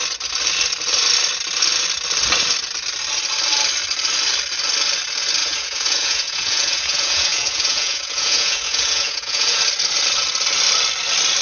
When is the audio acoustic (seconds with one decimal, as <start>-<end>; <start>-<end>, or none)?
0.0-5.4; 9.6-11.4